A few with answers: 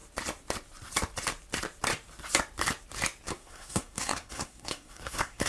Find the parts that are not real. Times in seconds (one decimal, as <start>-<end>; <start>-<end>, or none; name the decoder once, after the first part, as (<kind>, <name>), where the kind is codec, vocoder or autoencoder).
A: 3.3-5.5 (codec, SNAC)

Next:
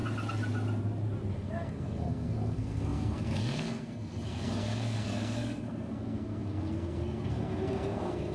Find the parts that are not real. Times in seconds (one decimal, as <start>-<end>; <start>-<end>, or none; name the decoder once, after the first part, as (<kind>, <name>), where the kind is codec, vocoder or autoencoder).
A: 1.3-8.3 (codec, SNAC)

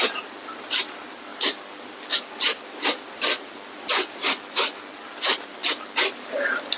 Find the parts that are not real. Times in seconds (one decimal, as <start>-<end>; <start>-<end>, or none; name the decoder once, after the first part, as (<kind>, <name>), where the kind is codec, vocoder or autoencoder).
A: none

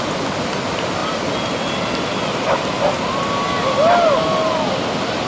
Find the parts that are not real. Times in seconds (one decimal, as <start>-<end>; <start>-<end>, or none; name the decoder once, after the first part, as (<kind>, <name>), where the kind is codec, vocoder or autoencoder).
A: none

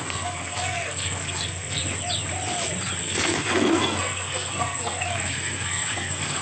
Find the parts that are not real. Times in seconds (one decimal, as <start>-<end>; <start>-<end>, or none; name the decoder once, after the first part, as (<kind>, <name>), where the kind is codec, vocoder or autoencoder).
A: 0.0-1.8 (codec, SNAC); 3.0-6.4